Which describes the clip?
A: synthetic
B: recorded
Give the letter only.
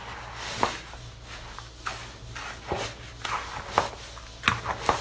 B